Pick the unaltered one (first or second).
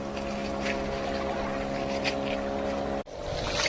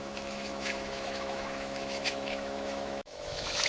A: first